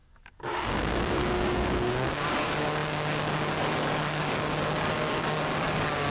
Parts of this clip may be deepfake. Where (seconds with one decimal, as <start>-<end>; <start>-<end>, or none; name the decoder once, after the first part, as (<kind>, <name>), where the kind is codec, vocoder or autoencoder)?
0.0-6.1 (codec, DAC)